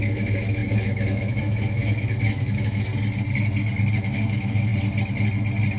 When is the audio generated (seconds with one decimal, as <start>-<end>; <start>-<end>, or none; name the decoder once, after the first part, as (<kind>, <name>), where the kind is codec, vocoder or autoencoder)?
0.0-2.9 (autoencoder, DAC-VAE); 3.9-4.7

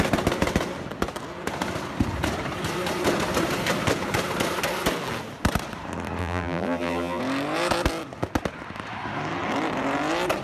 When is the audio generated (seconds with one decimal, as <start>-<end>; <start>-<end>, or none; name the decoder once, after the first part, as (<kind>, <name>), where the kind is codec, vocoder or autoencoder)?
6.2-7.2 (vocoder, BigVGAN v2)

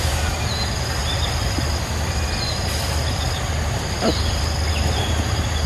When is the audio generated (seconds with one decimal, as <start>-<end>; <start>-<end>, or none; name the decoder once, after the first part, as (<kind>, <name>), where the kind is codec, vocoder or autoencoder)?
1.0-4.4 (vocoder, BigVGAN v2)

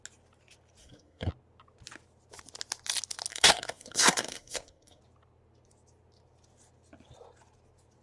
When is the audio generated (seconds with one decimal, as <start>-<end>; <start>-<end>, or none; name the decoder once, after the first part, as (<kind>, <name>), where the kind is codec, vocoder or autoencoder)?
0.8-1.3 (codec, SNAC); 3.3-5.0

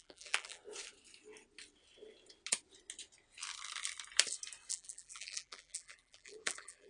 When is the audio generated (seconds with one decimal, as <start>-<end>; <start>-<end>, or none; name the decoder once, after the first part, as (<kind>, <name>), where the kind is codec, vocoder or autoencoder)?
0.0-0.6 (vocoder, BigVGAN v2); 4.7-6.9

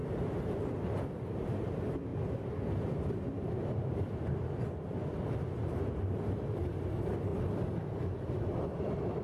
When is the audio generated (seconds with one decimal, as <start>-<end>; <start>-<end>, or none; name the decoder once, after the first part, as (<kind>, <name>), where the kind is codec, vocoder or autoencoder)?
0.7-2.1 (vocoder, BigVGAN v2); 2.9-7.3; 8.2-9.2

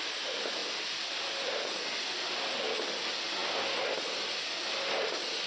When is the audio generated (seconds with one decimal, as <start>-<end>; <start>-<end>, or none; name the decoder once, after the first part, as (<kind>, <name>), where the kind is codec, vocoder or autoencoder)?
none

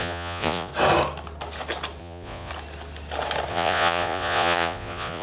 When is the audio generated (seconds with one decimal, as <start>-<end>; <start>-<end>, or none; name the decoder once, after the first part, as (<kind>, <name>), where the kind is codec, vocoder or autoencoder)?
0.0-0.7 (vocoder, Vocos); 2.0-2.5; 3.5-5.2